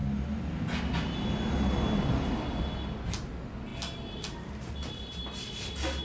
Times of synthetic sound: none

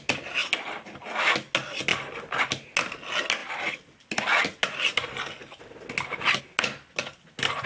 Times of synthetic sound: none

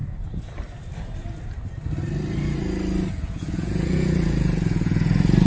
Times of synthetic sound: 3.1-5.5 (vocoder, Vocos)

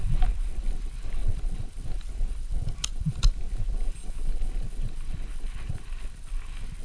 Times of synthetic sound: none

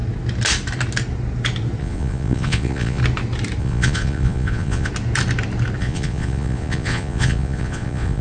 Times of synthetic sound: 1.8-3.0 (vocoder, Vocos); 3.6-4.9; 5.8-8.2